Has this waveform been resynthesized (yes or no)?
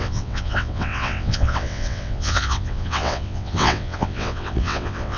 yes